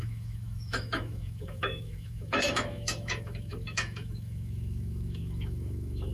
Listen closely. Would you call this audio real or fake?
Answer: fake